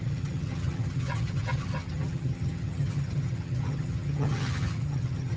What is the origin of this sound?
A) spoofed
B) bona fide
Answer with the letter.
A